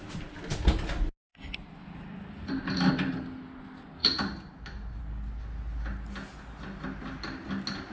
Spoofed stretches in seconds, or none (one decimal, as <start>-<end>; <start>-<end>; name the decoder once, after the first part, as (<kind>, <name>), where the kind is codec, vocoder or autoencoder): 4.0-5.0 (vocoder, BigVGAN v2)